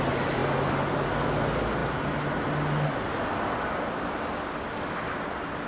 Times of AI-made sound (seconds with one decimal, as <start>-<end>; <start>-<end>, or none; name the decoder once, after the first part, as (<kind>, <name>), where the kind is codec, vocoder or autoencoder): none